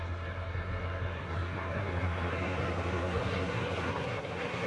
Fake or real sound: fake